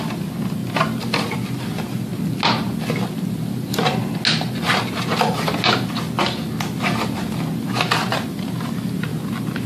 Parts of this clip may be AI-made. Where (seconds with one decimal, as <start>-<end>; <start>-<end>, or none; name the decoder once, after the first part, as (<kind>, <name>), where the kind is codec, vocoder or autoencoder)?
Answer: none

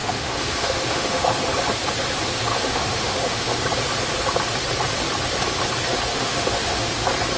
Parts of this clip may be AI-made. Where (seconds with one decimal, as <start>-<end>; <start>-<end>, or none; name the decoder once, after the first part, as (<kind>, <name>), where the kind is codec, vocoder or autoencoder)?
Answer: 0.0-1.3 (autoencoder, DAC-VAE); 2.5-3.6; 6.1-6.9

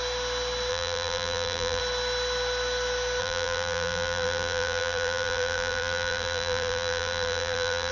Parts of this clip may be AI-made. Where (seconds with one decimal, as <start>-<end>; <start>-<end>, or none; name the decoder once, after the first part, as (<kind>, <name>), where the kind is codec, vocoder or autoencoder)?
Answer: 0.7-1.8 (vocoder, BigVGAN v2); 3.2-7.9